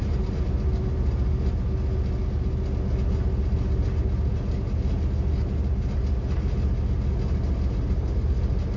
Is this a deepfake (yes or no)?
no